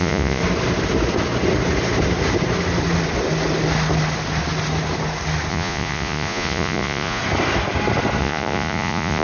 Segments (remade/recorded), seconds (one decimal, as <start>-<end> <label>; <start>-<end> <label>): 0.0-0.4 remade; 0.4-5.5 recorded; 5.5-7.2 remade; 7.2-8.2 recorded; 8.2-9.2 remade